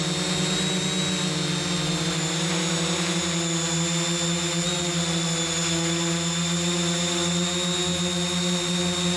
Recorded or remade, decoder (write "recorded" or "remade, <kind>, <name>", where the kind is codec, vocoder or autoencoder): recorded